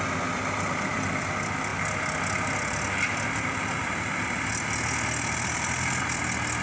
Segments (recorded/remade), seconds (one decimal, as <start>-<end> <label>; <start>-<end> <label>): 0.0-6.6 recorded